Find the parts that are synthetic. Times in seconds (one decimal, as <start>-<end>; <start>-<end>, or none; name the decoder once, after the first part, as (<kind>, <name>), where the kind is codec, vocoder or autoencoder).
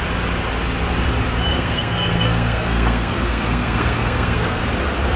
1.5-4.6 (codec, SNAC)